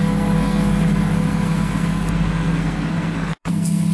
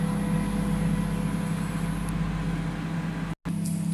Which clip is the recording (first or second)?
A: second